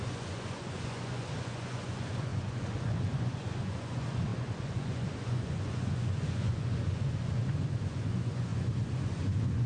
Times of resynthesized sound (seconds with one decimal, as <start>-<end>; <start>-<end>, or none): 0.0-9.7